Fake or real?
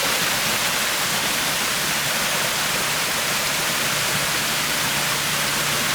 real